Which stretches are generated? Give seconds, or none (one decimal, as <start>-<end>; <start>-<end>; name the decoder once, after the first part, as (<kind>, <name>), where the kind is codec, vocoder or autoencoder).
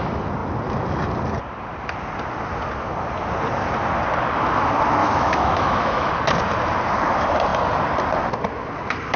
5.0-6.1 (autoencoder, DAC-VAE)